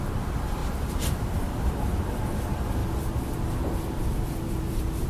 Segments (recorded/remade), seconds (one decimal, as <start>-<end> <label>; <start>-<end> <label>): 0.0-2.8 remade; 2.8-4.5 recorded; 4.5-5.1 remade